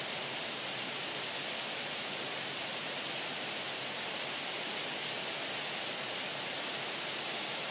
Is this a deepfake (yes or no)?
no